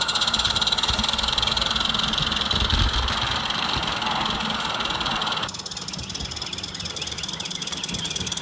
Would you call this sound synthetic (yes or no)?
no